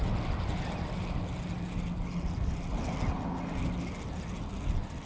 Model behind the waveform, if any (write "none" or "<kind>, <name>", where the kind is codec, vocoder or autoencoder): none